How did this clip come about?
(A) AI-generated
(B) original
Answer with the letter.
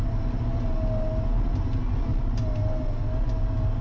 B